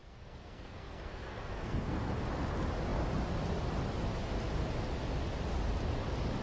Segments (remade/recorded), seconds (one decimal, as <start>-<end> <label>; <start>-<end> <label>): 0.0-2.1 remade; 2.1-6.4 recorded